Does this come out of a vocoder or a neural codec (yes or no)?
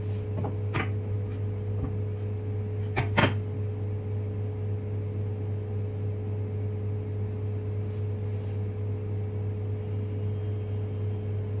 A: no